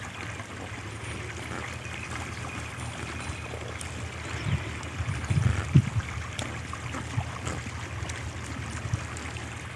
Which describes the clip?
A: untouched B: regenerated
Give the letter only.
A